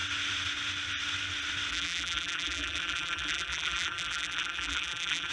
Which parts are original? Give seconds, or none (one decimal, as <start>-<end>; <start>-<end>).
0.0-1.7